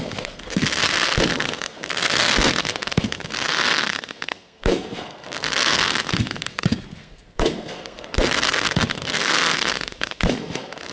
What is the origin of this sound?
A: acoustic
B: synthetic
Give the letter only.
B